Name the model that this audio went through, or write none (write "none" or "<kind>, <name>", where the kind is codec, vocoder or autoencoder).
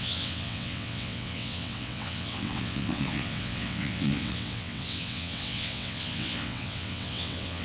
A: vocoder, WaveNeXt